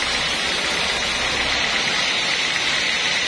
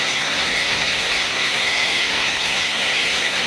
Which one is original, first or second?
first